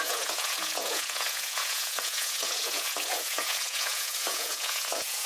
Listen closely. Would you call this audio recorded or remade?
remade